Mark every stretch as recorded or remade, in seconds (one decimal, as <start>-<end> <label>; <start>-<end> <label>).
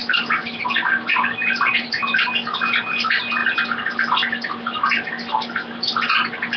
0.0-1.1 recorded; 1.1-2.2 remade; 2.2-6.6 recorded